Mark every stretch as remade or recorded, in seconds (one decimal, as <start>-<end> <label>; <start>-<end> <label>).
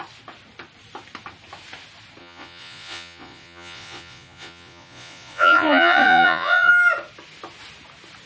0.0-2.2 recorded; 2.2-6.7 remade; 6.7-8.3 recorded